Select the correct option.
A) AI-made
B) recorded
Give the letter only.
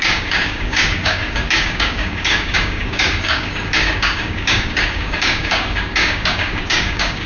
A